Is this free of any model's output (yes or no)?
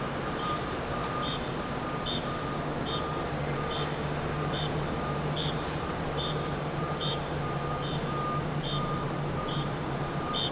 no